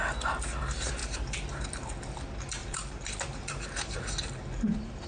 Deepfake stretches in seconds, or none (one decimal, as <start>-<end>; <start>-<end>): 1.0-1.7; 2.6-5.1